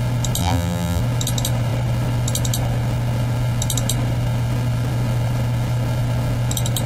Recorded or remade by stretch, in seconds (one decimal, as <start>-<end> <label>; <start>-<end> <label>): 0.0-0.4 recorded; 0.4-1.0 remade; 1.0-6.9 recorded